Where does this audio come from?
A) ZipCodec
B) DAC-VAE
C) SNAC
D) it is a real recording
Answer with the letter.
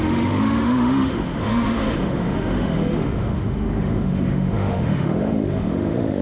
B